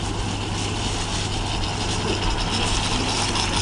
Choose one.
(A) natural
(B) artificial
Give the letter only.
A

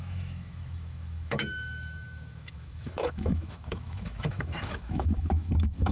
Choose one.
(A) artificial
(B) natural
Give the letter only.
A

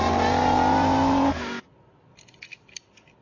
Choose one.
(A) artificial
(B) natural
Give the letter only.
B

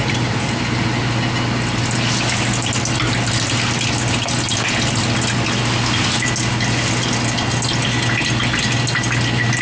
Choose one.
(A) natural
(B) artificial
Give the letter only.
A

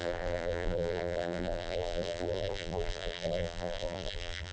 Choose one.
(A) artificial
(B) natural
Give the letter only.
A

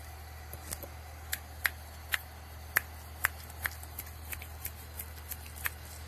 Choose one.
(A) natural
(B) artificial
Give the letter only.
A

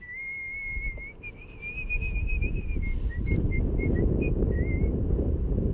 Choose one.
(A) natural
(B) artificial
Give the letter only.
A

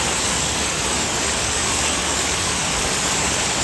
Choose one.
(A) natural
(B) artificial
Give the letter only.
B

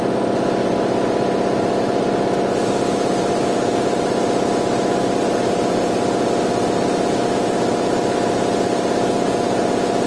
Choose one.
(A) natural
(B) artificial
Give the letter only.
A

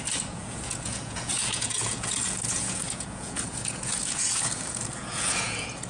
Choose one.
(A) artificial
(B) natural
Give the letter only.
A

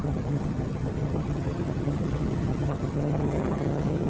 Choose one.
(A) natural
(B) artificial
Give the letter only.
B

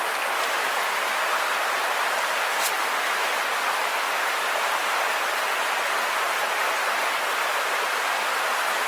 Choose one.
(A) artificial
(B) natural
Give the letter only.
B